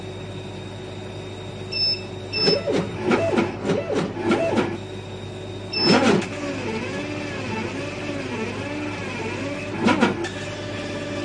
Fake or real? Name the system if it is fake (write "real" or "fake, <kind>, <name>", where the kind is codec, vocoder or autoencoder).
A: real